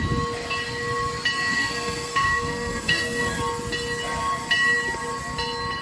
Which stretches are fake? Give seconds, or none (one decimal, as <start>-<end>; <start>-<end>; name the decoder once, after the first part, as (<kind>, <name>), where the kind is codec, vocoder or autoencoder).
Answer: 1.5-3.4 (codec, SNAC)